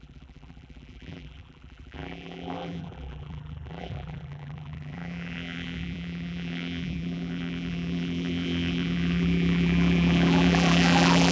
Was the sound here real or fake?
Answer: fake